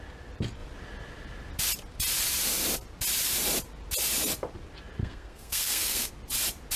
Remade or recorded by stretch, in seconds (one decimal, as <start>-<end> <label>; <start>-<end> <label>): 0.0-5.0 recorded; 5.0-6.1 remade; 6.1-6.8 recorded